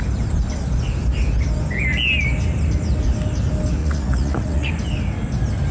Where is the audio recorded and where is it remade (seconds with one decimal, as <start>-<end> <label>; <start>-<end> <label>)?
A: 0.0-3.8 recorded; 3.8-4.7 remade; 4.7-5.7 recorded